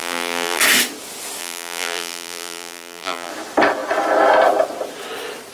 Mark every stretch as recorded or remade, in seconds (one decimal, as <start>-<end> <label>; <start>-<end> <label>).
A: 0.0-0.6 remade; 0.6-1.4 recorded; 1.4-3.3 remade; 3.3-5.5 recorded